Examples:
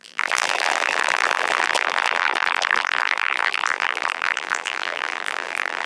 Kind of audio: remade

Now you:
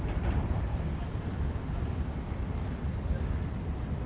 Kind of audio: remade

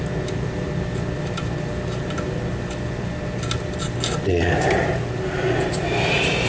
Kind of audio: recorded